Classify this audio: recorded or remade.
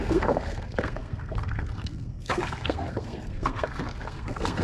remade